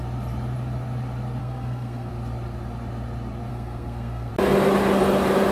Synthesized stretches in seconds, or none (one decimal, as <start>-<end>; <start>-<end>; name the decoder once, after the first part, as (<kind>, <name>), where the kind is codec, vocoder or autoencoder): 1.4-2.1 (codec, SNAC); 3.5-4.3